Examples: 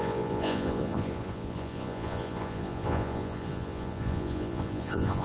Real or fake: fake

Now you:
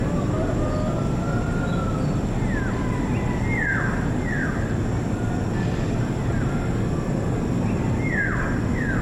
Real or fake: real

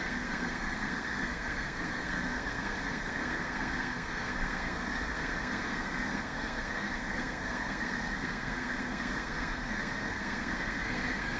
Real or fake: fake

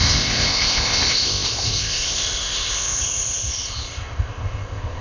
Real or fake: fake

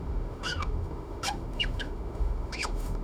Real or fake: fake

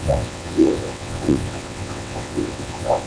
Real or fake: fake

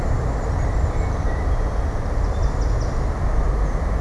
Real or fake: real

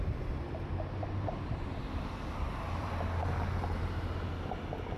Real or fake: real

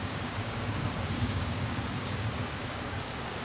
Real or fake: fake